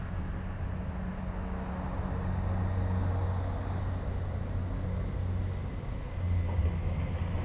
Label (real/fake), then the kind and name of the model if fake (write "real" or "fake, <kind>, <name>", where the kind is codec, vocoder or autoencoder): real